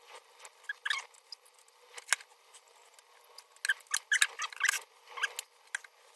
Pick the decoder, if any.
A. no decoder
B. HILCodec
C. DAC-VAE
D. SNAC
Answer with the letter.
A